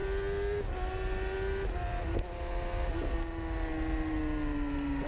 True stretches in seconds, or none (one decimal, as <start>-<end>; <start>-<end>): 0.0-5.1